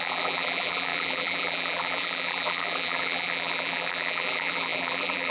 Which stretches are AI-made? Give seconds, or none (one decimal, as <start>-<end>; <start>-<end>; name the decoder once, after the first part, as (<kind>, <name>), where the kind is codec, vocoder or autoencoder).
0.0-5.3 (vocoder, BigVGAN v2)